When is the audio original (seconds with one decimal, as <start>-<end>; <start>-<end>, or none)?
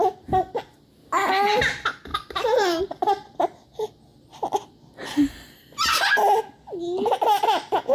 0.0-2.1; 2.8-7.9